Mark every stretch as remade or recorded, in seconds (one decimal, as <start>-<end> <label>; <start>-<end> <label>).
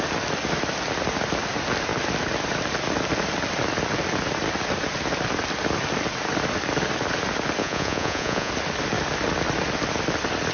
0.0-7.6 recorded; 7.6-8.5 remade; 8.5-10.5 recorded